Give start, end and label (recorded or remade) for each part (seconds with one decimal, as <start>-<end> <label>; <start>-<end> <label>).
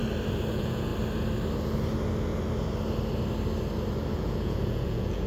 0.0-0.5 recorded; 0.5-0.9 remade; 0.9-4.1 recorded; 4.1-5.3 remade